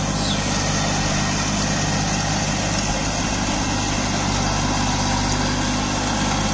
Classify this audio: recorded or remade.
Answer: recorded